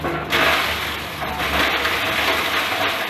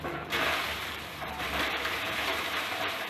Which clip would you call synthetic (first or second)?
second